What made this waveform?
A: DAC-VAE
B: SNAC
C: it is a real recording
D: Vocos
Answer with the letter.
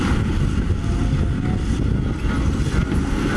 C